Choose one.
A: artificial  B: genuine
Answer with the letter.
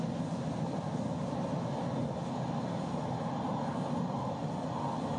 B